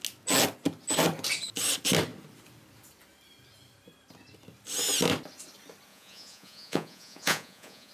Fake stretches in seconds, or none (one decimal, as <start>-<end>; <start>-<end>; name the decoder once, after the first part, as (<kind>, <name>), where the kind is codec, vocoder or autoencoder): 5.9-7.9 (vocoder, Vocos)